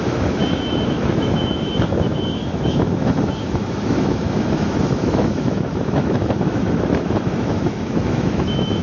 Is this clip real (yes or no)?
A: no